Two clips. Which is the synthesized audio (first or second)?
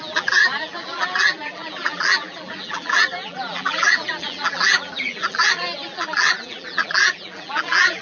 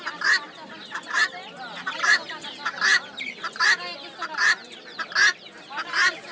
first